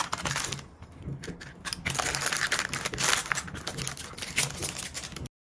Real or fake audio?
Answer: real